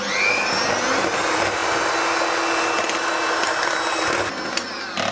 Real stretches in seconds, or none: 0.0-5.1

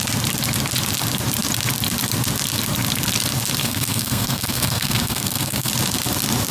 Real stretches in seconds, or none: 0.0-3.6; 5.7-6.5

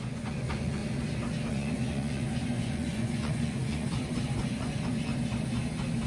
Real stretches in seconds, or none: 0.8-1.5; 5.1-6.1